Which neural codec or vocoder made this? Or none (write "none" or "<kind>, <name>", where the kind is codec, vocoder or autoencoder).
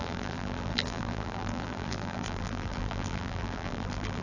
vocoder, BigVGAN v2